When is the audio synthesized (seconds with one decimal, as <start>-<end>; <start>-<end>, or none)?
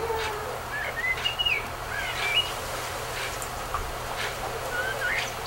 0.0-2.0; 3.8-4.3